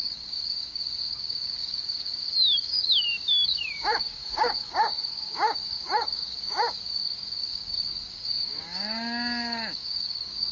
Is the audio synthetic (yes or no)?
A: yes